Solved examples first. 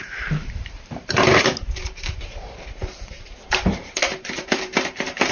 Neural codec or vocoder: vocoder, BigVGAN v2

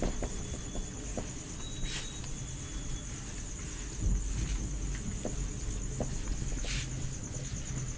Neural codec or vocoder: none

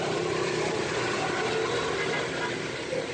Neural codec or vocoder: vocoder, BigVGAN v2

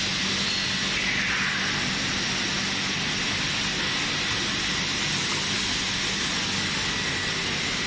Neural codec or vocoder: none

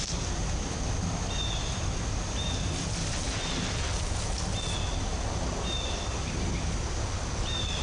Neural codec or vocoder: none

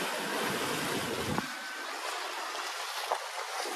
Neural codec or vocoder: none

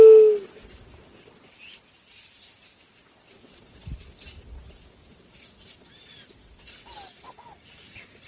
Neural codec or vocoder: none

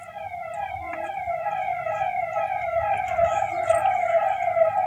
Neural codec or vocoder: none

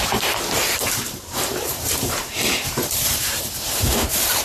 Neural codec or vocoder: vocoder, BigVGAN v2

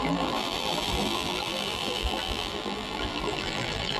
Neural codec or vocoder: vocoder, BigVGAN v2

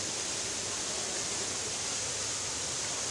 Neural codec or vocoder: none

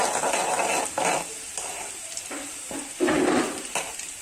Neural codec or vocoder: none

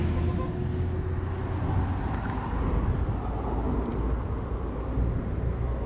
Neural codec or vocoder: none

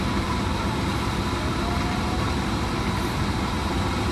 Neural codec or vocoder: vocoder, BigVGAN v2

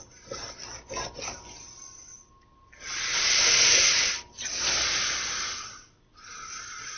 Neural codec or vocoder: none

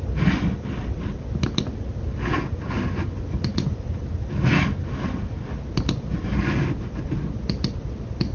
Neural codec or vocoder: none